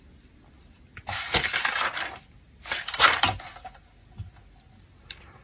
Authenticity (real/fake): real